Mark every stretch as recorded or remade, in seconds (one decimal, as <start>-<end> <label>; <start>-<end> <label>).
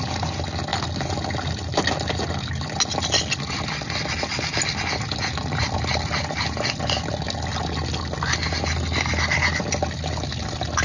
0.0-10.8 recorded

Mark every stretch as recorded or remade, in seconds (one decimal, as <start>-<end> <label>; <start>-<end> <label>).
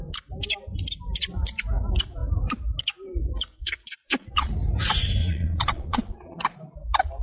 0.0-3.6 recorded; 3.6-4.5 remade; 4.5-5.2 recorded; 5.2-6.4 remade; 6.4-7.2 recorded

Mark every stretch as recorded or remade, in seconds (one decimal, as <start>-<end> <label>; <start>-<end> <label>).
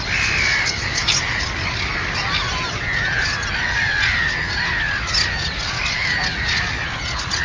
0.0-7.4 recorded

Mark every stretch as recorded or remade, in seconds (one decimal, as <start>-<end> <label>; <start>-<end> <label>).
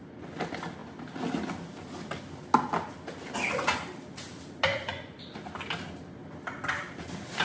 0.0-4.7 recorded; 4.7-5.2 remade; 5.2-7.4 recorded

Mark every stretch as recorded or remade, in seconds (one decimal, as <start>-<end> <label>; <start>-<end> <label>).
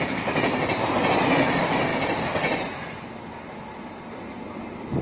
0.0-5.0 recorded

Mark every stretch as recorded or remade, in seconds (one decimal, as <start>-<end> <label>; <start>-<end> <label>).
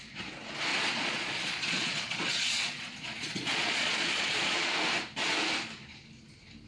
0.0-0.7 recorded; 0.7-4.7 remade; 4.7-6.7 recorded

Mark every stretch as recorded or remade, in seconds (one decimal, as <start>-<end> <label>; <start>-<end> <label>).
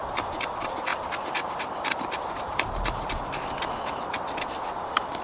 0.0-5.2 recorded